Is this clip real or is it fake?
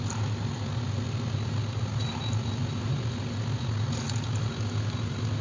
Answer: real